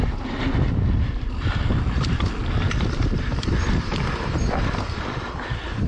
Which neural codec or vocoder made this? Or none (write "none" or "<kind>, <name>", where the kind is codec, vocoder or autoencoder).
vocoder, BigVGAN v2